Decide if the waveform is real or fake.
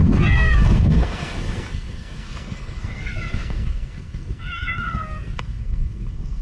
fake